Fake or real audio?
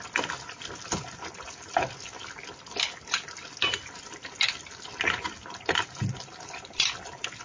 real